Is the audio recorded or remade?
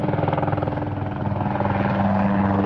recorded